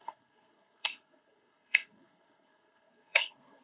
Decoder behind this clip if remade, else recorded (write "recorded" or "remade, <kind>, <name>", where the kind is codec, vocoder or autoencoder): remade, codec, SNAC